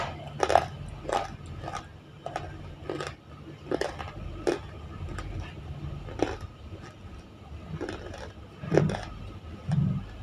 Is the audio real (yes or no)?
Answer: yes